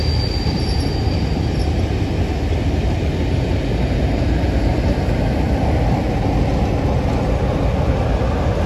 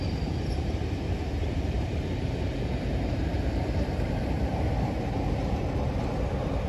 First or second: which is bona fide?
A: first